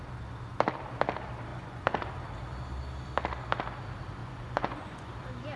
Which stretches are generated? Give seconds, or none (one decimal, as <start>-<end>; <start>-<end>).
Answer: 1.5-2.1; 4.2-5.1